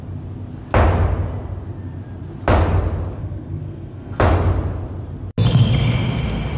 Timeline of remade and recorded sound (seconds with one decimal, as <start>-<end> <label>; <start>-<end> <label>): 0.0-3.2 recorded; 3.2-4.2 remade; 4.2-6.6 recorded